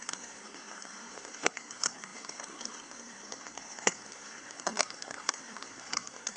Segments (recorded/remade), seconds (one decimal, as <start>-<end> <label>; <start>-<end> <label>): 0.0-6.4 remade